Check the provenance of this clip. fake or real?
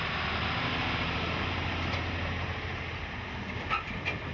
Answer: real